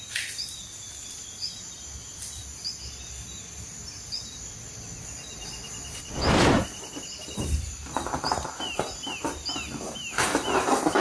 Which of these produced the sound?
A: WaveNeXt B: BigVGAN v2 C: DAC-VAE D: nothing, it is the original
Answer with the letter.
D